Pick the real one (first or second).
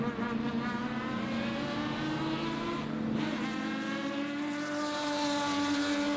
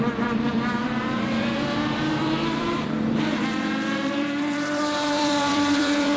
first